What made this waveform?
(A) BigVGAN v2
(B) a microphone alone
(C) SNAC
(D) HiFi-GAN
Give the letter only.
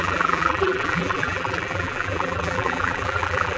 A